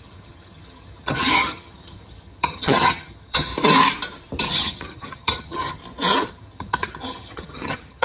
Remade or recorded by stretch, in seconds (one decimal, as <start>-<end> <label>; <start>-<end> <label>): 0.0-3.5 remade; 3.5-4.4 recorded; 4.4-5.8 remade; 5.8-6.3 recorded; 6.3-8.0 remade